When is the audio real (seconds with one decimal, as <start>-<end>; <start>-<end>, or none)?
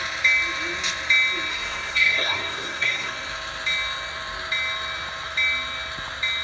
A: 0.0-1.5; 3.1-6.4